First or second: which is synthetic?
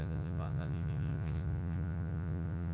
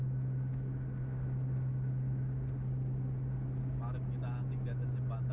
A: first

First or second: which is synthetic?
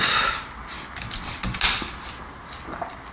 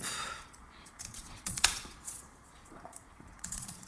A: second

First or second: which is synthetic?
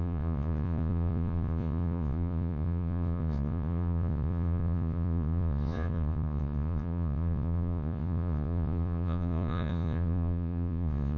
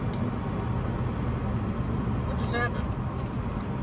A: first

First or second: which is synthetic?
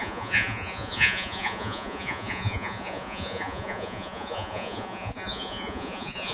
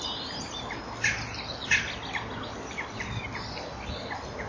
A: first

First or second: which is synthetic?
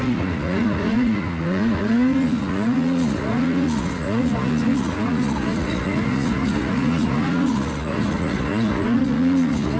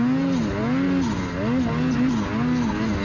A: first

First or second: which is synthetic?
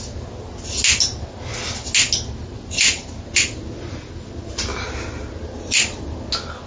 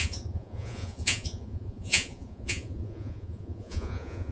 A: second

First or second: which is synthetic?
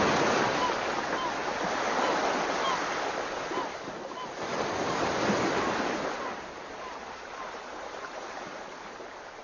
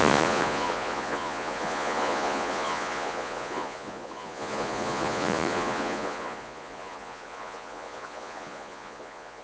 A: second